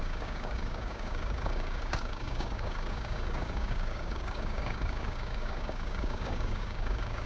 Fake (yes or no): yes